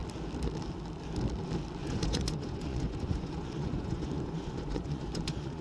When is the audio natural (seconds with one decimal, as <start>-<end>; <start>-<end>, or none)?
0.0-1.8